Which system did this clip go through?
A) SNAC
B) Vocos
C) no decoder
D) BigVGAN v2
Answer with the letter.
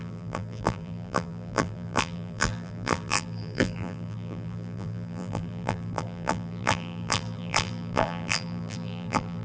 D